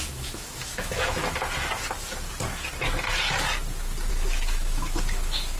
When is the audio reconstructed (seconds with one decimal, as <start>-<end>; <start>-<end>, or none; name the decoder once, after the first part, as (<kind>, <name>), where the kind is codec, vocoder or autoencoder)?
0.0-1.2 (autoencoder, DAC-VAE); 4.1-5.6